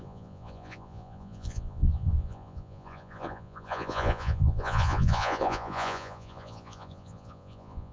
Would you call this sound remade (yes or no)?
yes